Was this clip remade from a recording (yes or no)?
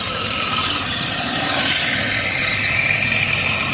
yes